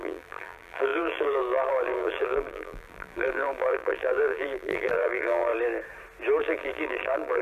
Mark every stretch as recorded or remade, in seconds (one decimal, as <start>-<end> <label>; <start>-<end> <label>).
0.0-5.5 remade; 5.5-6.4 recorded; 6.4-7.4 remade